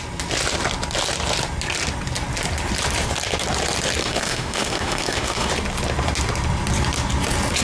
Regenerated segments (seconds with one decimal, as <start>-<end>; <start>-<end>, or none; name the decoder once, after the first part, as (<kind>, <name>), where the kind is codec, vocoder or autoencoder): 4.0-5.5 (autoencoder, DAC-VAE)